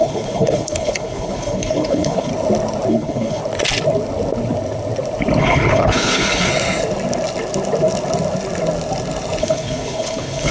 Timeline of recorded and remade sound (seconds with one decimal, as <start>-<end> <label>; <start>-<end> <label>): 0.0-2.3 remade; 2.3-2.9 recorded; 2.9-3.4 remade; 3.4-5.4 recorded; 5.4-6.5 remade; 6.5-9.4 recorded; 9.4-10.5 remade